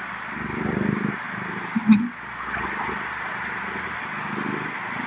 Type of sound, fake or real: real